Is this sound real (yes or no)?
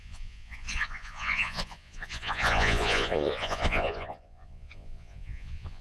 no